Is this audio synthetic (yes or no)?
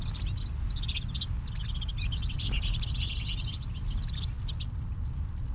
no